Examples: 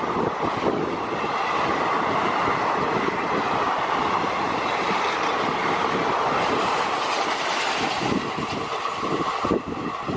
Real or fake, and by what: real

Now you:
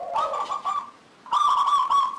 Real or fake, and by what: real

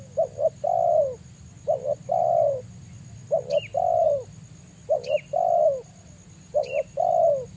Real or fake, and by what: real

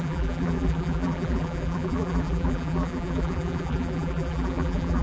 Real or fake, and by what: fake, vocoder, BigVGAN v2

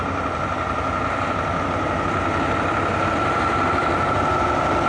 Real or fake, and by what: fake, vocoder, BigVGAN v2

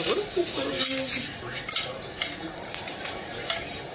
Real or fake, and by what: fake, vocoder, BigVGAN v2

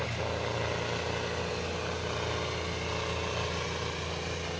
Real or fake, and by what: real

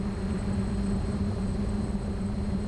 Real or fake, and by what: fake, vocoder, BigVGAN v2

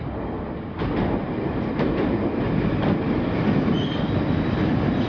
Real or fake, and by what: real